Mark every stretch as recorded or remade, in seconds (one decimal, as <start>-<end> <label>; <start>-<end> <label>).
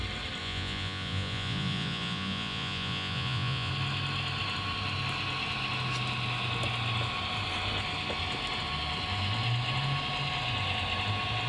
0.0-0.4 recorded; 0.4-3.7 remade; 3.7-11.5 recorded